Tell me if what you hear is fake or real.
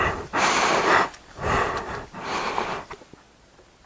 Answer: real